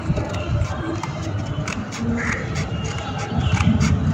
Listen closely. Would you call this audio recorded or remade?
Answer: remade